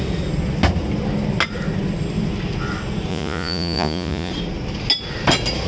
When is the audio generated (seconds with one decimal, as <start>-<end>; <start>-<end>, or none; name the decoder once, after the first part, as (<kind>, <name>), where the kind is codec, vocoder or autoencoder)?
3.1-4.3 (vocoder, Vocos)